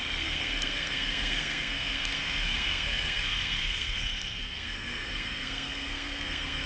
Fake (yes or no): yes